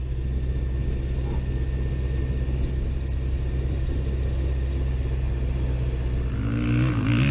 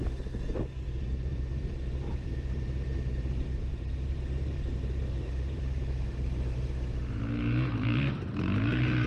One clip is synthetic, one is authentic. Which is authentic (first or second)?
first